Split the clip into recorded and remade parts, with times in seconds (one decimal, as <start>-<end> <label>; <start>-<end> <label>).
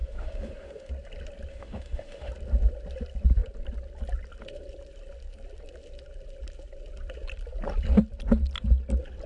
0.0-0.9 remade; 0.9-1.5 recorded; 1.5-2.3 remade; 2.3-9.3 recorded